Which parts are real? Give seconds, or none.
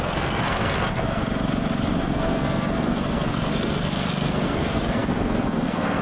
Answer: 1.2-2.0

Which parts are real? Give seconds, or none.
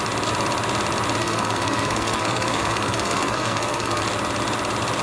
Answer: 0.0-1.2; 4.0-5.0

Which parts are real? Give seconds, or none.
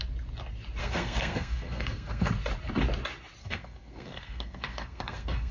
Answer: 0.0-0.8; 2.3-3.4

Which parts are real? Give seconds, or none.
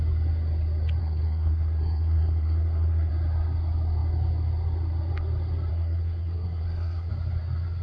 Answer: 0.0-1.0; 3.1-5.7; 7.1-7.8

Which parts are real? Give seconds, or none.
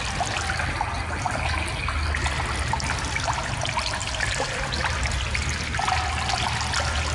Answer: 0.0-7.1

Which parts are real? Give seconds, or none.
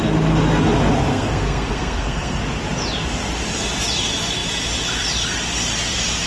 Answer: 0.0-1.1; 2.4-6.3